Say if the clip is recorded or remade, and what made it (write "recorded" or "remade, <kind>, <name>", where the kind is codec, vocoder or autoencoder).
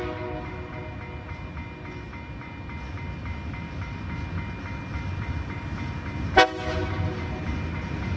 recorded